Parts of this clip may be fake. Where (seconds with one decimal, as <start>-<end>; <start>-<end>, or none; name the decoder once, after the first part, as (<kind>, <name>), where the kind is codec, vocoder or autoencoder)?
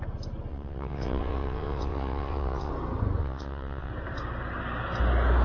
0.5-2.7 (vocoder, WaveNeXt); 3.2-3.9